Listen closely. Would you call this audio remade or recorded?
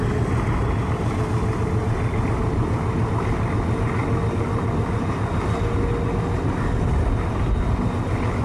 recorded